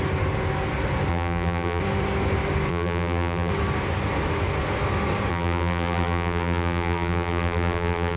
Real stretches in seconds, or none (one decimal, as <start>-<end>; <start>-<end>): 0.0-1.1; 1.8-2.7; 3.5-5.3